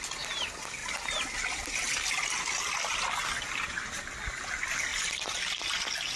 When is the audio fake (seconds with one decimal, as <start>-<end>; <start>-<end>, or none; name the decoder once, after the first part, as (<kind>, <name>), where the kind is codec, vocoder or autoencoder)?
none